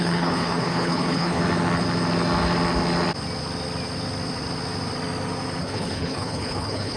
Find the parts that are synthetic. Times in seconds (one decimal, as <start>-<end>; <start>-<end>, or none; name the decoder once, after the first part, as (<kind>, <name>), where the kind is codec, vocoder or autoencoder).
0.0-1.4 (codec, HILCodec); 5.6-7.0